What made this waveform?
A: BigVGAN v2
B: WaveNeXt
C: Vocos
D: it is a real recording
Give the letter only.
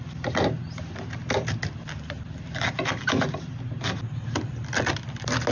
D